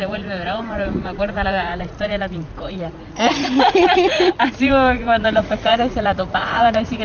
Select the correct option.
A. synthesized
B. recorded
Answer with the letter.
A